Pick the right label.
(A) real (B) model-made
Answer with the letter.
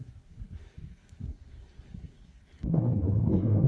B